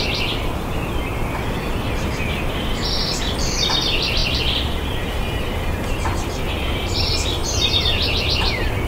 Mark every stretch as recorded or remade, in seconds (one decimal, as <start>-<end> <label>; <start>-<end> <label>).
0.0-8.9 recorded